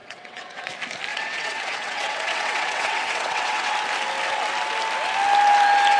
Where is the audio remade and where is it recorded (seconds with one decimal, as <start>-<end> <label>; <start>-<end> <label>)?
0.0-0.7 remade; 0.7-1.1 recorded; 1.1-3.7 remade; 3.7-6.0 recorded